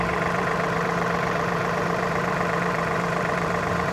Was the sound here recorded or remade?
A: remade